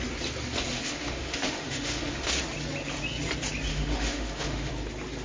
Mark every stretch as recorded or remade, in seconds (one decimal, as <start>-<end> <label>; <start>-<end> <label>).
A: 0.0-0.7 recorded; 0.7-2.4 remade; 2.4-3.7 recorded; 3.7-4.7 remade; 4.7-5.2 recorded